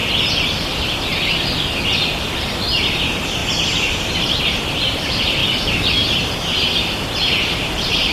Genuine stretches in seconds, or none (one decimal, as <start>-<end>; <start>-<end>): 0.0-3.0; 5.4-7.4